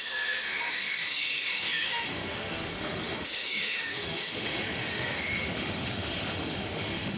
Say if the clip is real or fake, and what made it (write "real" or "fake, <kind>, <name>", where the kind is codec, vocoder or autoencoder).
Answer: fake, autoencoder, DAC-VAE